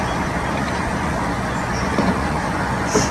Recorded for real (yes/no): no